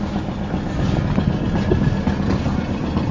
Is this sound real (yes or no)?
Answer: yes